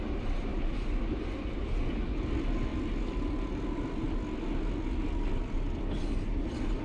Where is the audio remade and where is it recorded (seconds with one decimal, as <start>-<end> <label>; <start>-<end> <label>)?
0.0-6.8 recorded